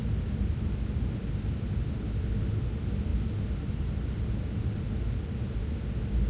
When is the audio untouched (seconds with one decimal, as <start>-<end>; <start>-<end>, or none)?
0.0-6.3